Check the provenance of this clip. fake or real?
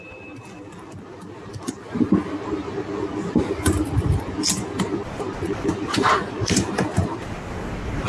fake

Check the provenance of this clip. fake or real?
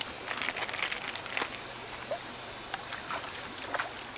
real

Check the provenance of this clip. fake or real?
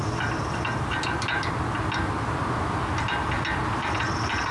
real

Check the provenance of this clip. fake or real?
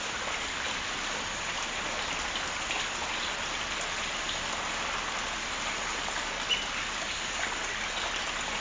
real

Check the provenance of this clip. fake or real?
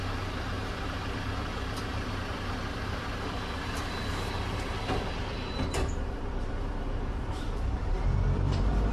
fake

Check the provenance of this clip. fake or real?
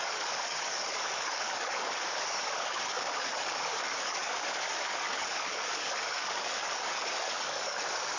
fake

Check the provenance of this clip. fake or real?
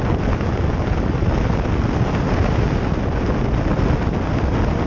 real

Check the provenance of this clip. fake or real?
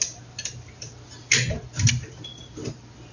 real